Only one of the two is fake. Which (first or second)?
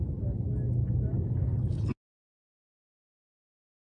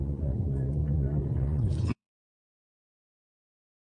second